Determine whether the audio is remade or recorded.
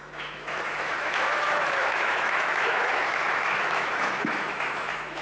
remade